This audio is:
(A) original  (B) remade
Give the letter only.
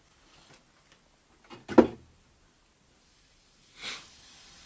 A